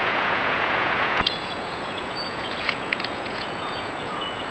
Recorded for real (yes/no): no